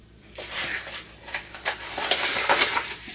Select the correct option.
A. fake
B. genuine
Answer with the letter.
A